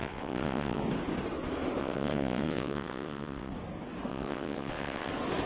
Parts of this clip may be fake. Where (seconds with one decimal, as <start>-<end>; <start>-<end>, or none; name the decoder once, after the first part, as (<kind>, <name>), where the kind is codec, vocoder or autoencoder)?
0.0-0.8 (vocoder, WaveNeXt); 1.8-3.5; 4.1-5.1

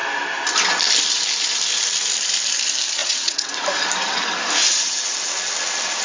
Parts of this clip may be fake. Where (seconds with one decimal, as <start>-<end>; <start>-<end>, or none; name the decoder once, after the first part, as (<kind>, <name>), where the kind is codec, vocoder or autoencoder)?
3.0-3.5 (vocoder, WaveNeXt); 4.6-5.1

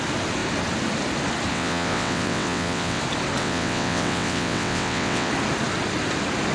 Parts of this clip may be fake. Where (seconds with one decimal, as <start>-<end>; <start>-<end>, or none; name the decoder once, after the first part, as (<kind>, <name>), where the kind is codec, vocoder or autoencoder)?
1.5-3.0 (vocoder, WaveNeXt); 3.4-5.3

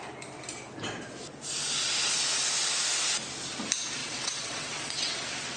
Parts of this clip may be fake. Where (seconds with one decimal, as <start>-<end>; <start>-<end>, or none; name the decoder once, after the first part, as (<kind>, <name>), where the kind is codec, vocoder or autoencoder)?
4.0-5.1 (vocoder, WaveNeXt)